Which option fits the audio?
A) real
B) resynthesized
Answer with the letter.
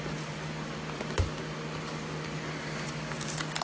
A